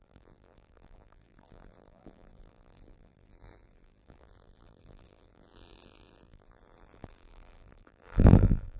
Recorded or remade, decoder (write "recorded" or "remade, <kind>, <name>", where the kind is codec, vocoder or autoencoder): remade, vocoder, BigVGAN v2